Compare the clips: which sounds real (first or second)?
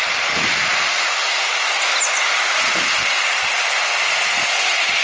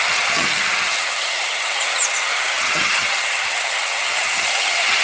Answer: first